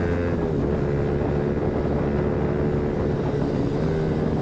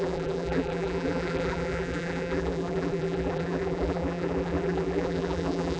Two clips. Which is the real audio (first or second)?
first